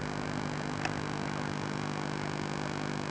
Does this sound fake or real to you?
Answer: real